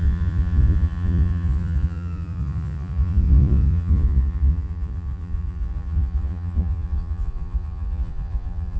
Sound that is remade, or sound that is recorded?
remade